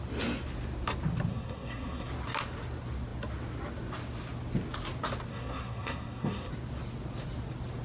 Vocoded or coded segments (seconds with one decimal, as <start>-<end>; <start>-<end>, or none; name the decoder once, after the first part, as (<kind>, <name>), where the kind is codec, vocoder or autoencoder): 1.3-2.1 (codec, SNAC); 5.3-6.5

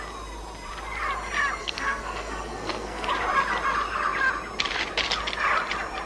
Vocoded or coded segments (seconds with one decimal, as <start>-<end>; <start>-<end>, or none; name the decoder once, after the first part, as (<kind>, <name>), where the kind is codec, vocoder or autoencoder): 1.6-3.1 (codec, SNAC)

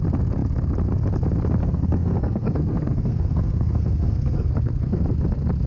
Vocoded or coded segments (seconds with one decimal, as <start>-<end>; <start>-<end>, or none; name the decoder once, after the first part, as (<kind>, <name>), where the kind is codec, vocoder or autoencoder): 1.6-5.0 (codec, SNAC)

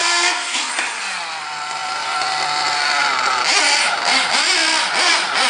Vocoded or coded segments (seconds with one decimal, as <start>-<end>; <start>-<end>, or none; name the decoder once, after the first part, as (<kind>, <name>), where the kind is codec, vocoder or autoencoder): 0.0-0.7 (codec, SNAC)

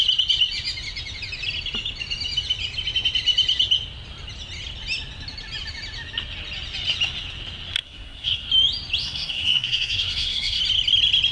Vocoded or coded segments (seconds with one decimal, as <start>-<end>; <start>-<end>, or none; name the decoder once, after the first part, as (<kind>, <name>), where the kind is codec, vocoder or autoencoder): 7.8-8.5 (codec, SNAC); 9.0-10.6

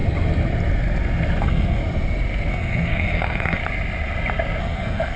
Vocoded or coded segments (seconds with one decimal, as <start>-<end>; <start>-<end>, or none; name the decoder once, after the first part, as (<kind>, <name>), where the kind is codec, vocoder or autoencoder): 1.4-1.8 (codec, SNAC); 2.5-3.6; 4.6-5.2

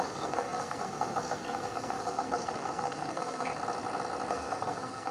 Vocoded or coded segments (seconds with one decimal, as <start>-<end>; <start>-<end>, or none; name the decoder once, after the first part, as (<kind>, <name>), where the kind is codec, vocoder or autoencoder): 0.0-3.5 (codec, SNAC); 4.3-5.1

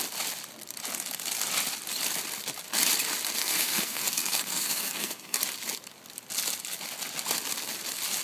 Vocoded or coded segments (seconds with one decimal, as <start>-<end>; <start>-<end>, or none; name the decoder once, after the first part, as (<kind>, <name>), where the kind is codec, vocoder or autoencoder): 3.4-5.4 (codec, SNAC)